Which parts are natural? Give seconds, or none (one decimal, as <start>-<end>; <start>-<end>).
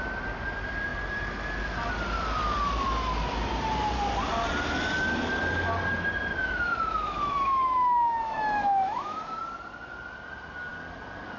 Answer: 0.0-6.4; 9.4-11.4